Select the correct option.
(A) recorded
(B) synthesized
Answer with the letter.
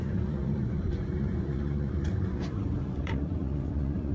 B